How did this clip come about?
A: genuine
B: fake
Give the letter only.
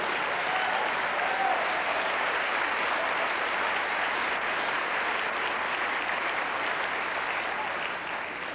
A